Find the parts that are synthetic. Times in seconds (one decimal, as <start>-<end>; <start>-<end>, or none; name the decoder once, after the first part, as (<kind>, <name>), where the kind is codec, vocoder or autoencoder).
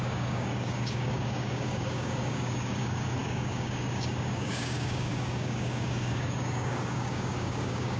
0.0-8.0 (codec, DAC)